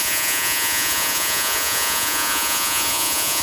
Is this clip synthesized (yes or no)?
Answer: yes